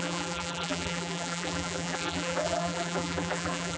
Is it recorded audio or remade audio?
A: remade